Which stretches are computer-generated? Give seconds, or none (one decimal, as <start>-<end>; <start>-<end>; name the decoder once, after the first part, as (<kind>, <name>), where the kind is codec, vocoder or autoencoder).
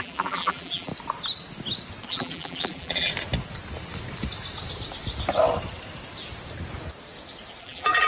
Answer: 0.0-0.9 (vocoder, BigVGAN v2); 2.1-3.1; 7.6-8.1